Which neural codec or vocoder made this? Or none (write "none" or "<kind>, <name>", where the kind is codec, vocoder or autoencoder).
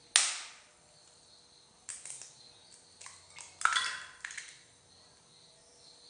none